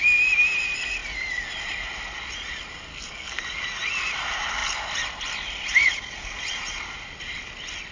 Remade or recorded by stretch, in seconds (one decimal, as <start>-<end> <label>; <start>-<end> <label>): 0.0-2.9 recorded; 2.9-3.4 remade; 3.4-7.9 recorded